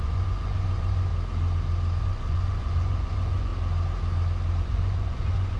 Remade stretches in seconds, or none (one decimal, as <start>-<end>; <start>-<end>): 0.0-1.1; 2.0-3.5; 4.6-5.6